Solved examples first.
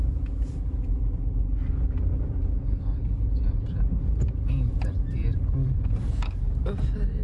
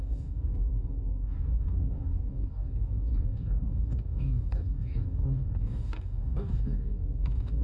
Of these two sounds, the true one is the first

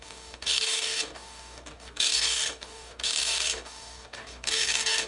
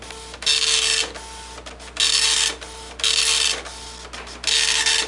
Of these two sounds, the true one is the second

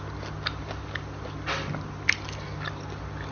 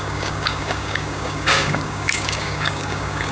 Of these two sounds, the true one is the first